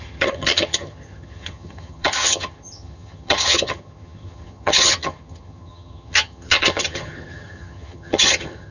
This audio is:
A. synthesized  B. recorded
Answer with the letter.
A